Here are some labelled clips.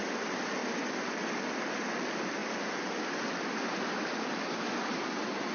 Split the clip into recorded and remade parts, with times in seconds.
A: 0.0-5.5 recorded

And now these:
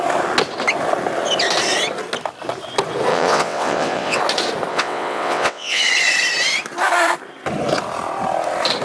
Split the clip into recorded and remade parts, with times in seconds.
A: 0.0-3.1 recorded; 3.1-4.2 remade; 4.2-4.7 recorded; 4.7-5.8 remade; 5.8-8.8 recorded

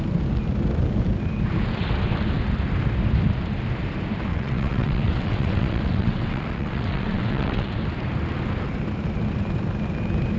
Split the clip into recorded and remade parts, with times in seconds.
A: 0.0-4.3 recorded; 4.3-7.7 remade; 7.7-10.4 recorded

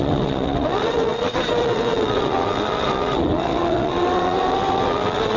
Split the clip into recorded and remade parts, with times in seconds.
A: 0.0-5.4 remade